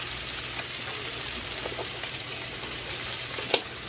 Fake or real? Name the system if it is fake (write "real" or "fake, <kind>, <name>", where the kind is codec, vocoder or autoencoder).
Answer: real